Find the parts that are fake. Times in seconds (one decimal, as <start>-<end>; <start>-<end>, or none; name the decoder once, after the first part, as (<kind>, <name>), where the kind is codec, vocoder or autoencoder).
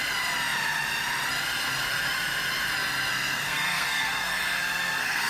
3.1-5.3 (codec, SNAC)